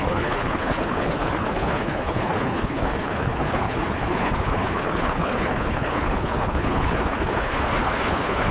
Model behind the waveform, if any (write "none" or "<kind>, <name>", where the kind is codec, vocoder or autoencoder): codec, HILCodec